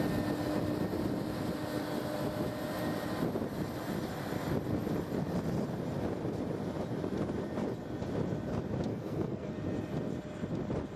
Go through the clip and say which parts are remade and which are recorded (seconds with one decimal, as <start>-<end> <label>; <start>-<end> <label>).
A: 0.0-8.9 recorded; 8.9-9.5 remade; 9.5-11.0 recorded

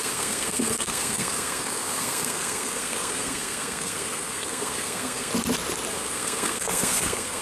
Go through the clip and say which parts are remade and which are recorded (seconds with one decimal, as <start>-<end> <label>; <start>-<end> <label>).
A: 0.0-5.3 remade; 5.3-5.9 recorded; 5.9-7.4 remade

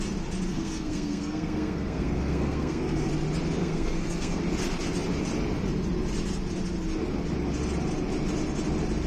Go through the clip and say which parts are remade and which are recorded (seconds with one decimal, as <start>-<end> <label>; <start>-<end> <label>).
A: 0.0-0.5 recorded; 0.5-3.1 remade; 3.1-3.6 recorded; 3.6-4.4 remade; 4.4-9.1 recorded

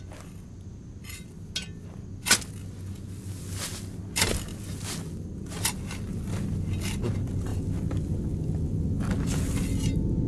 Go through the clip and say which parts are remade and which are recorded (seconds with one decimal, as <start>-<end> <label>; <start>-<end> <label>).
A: 0.0-10.3 recorded

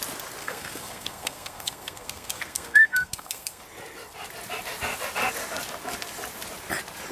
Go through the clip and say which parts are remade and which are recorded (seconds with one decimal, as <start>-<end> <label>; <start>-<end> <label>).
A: 0.0-0.4 recorded; 0.4-3.6 remade; 3.6-7.1 recorded

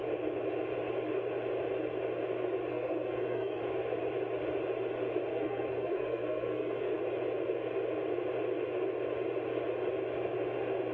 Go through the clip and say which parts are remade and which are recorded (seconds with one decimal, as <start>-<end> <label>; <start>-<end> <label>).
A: 0.0-2.7 recorded; 2.7-3.6 remade; 3.6-5.3 recorded; 5.3-7.0 remade; 7.0-10.9 recorded